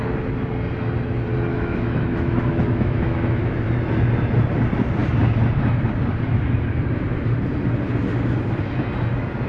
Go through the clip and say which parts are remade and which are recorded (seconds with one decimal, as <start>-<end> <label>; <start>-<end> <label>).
0.0-1.5 recorded; 1.5-3.6 remade; 3.6-9.5 recorded